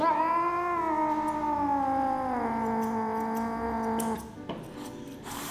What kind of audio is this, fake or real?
real